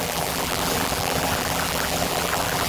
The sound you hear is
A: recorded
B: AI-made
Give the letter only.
B